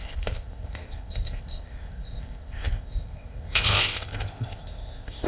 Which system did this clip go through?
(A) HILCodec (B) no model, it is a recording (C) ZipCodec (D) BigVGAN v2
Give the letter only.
C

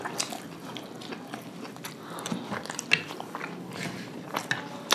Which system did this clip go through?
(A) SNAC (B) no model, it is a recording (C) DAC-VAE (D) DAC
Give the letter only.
B